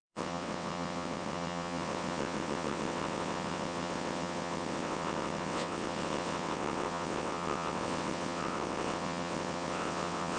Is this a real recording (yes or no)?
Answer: no